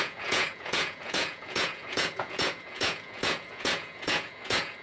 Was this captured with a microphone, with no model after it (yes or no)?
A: no